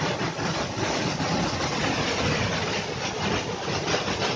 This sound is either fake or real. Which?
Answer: real